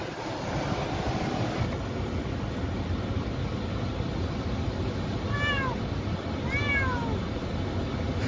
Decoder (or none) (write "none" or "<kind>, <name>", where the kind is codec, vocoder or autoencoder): none